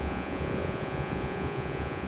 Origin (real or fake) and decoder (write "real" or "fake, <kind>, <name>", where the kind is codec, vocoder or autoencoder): fake, vocoder, Vocos